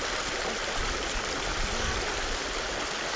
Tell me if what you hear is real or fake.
real